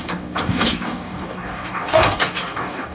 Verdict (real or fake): fake